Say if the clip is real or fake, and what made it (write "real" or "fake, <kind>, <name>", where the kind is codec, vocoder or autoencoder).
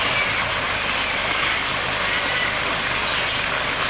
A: real